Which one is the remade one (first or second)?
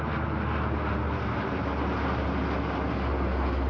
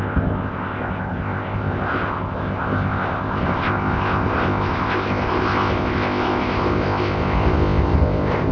second